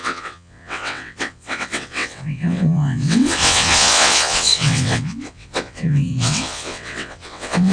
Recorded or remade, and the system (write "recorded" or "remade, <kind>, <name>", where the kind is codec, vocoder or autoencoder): remade, vocoder, WaveNeXt